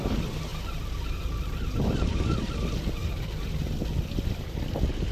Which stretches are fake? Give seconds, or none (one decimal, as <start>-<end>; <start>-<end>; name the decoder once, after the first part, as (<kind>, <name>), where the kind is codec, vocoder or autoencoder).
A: 0.5-2.5 (vocoder, BigVGAN v2)